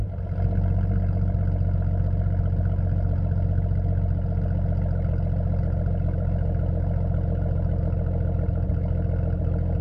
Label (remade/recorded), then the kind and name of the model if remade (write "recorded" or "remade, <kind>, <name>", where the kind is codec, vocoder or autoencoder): recorded